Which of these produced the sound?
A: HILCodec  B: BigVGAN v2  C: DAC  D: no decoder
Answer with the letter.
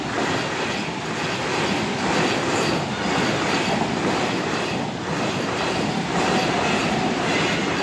D